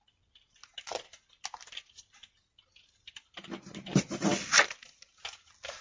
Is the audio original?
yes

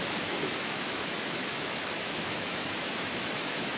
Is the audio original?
no